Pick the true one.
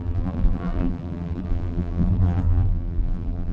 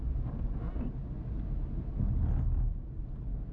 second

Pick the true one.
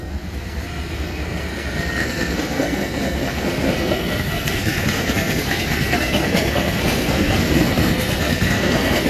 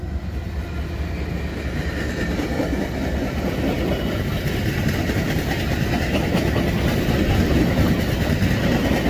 second